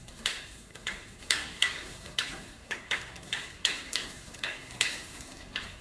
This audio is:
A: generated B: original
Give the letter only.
A